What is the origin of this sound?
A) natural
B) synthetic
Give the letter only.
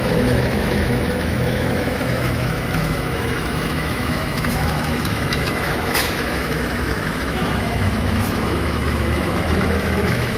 B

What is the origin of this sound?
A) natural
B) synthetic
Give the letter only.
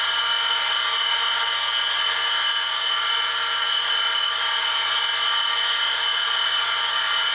A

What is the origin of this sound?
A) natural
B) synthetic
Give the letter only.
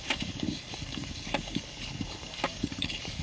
B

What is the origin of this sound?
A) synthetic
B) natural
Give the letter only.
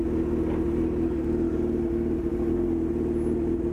B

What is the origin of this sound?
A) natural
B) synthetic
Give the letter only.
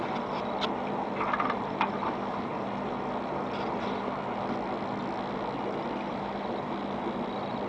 A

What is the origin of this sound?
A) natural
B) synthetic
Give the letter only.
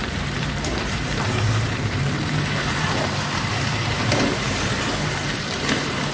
B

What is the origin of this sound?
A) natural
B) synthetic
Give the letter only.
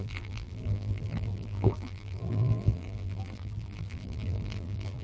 B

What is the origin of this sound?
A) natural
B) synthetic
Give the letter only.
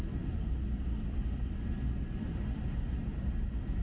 A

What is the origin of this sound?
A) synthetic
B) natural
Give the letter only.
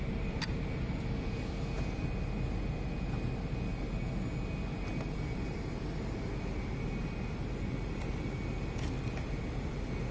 B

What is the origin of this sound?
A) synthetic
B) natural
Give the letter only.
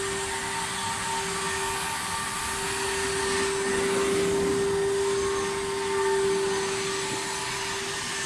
B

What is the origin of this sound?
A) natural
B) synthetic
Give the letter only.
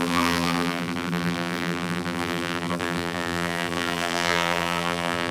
B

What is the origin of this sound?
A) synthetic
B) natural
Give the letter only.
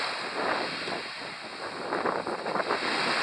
B